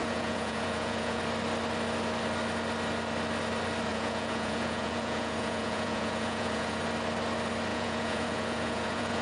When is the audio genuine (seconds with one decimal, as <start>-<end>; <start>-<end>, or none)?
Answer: 1.2-3.9; 6.8-7.7